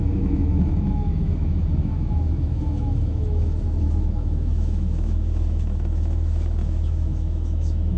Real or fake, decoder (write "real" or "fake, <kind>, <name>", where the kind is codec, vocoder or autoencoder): fake, autoencoder, DAC-VAE